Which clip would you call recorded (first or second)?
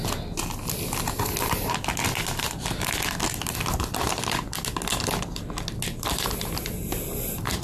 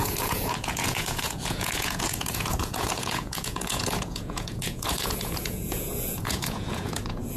first